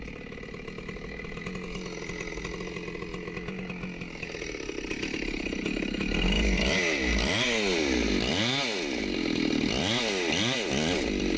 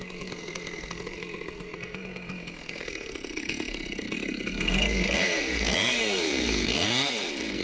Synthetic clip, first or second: second